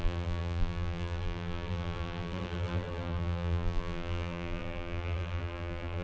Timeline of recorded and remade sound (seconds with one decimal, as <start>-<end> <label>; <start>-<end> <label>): 0.0-6.0 remade